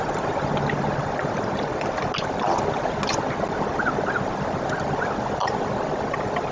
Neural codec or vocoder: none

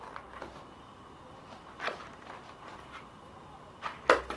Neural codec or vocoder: none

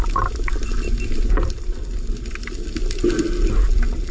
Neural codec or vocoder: none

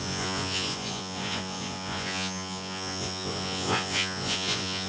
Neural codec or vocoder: vocoder, Vocos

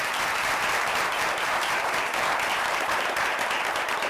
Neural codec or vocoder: vocoder, BigVGAN v2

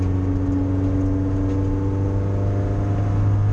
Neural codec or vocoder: none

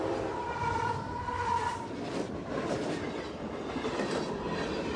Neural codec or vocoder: vocoder, BigVGAN v2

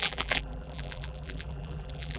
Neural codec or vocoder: vocoder, BigVGAN v2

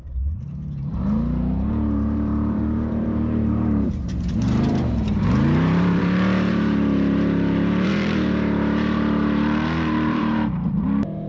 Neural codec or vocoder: vocoder, BigVGAN v2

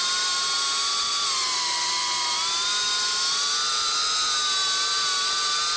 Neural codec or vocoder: none